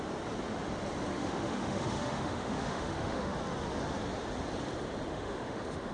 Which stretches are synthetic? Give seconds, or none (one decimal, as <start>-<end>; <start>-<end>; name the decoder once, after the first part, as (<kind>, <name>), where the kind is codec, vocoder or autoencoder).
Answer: 1.1-3.4 (autoencoder, DAC-VAE); 5.1-5.9